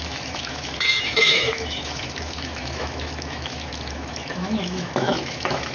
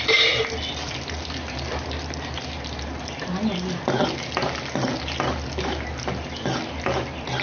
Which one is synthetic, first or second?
first